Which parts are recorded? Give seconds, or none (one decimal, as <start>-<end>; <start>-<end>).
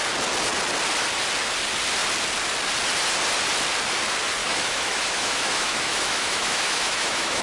0.0-4.4